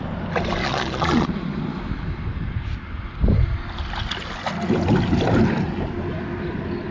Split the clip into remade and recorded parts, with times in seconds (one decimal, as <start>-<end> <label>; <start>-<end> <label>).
0.0-0.6 recorded; 0.6-1.3 remade; 1.3-6.9 recorded